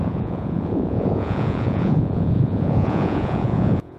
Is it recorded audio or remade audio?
remade